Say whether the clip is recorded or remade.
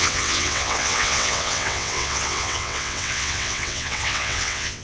remade